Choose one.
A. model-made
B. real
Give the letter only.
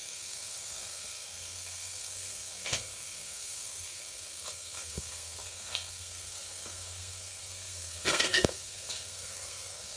A